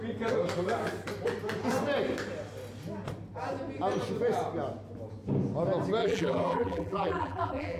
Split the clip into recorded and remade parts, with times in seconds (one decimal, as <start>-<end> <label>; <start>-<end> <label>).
0.0-6.0 recorded; 6.0-7.8 remade